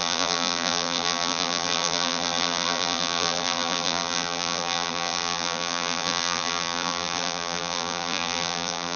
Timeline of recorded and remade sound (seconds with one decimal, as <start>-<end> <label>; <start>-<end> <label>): 0.0-9.0 remade